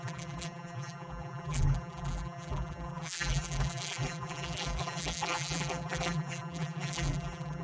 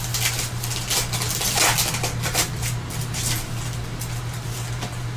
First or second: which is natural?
second